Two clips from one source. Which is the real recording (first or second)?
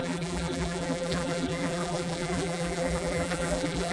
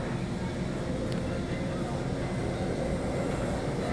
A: second